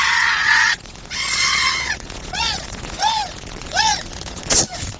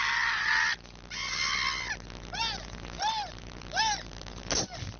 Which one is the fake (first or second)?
first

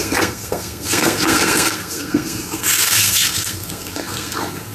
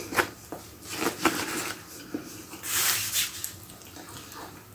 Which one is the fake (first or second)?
first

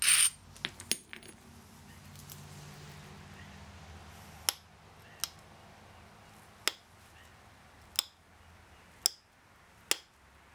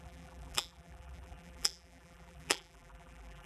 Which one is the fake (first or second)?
second